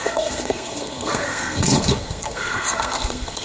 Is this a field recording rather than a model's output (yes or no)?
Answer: no